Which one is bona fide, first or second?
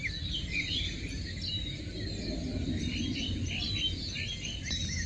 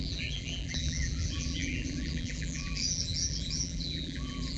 first